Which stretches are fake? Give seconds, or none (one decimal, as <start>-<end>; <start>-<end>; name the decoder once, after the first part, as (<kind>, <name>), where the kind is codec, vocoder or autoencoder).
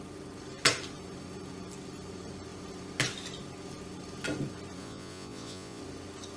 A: 4.8-5.8 (vocoder, Vocos)